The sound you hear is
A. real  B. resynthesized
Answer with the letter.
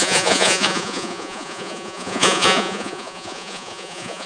B